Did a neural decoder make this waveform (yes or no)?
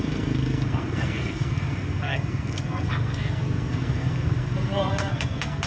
yes